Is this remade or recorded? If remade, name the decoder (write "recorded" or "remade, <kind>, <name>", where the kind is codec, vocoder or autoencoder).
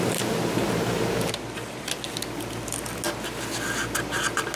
recorded